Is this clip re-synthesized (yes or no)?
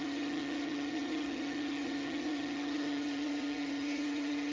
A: yes